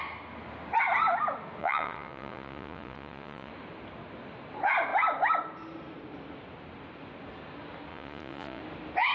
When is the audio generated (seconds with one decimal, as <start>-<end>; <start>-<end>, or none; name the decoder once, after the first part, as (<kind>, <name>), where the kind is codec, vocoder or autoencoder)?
1.6-3.5 (vocoder, Vocos); 7.9-8.6